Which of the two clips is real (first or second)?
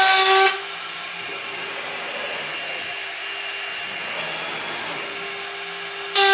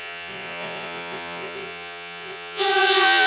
first